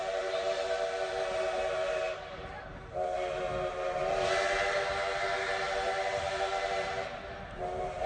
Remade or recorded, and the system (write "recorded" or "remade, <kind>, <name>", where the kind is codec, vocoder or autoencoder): remade, vocoder, BigVGAN v2